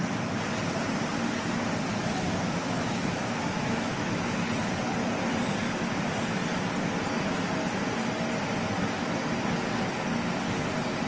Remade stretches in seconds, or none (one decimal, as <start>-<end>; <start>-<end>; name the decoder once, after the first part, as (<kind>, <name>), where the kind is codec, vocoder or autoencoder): 1.9-4.5 (autoencoder, DAC-VAE)